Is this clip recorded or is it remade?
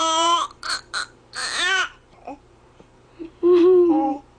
remade